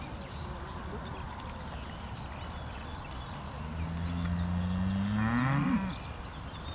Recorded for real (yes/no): yes